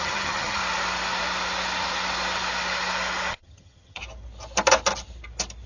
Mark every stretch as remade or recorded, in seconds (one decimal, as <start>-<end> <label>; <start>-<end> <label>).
0.0-0.6 remade; 0.6-3.3 recorded; 3.3-4.0 remade; 4.0-5.7 recorded